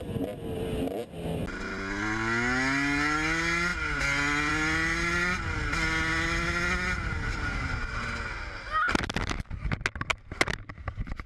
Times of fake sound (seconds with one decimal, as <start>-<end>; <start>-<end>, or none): none